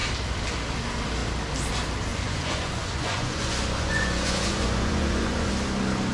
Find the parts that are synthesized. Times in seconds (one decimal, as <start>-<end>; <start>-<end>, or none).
2.1-5.5